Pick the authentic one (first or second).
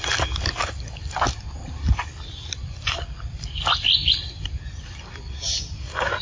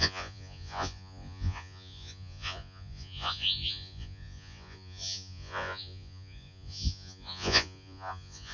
first